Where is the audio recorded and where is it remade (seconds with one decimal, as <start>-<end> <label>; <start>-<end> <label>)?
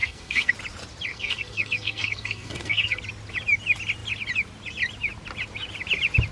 0.0-0.5 remade; 0.5-1.1 recorded; 1.1-3.0 remade; 3.0-6.3 recorded